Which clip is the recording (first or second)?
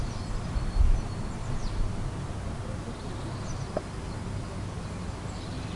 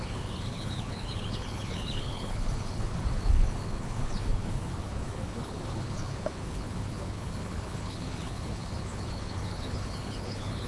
first